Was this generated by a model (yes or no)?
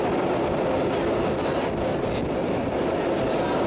no